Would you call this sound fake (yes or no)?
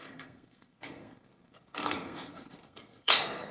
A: yes